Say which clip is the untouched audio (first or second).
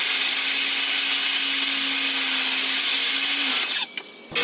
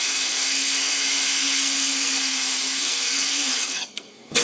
first